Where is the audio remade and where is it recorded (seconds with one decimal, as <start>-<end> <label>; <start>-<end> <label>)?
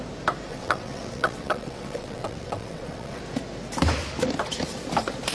0.0-0.5 recorded; 0.5-3.2 remade; 3.2-5.3 recorded